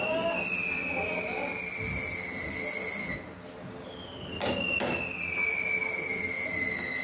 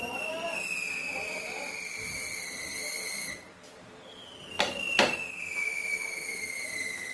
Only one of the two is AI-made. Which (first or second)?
second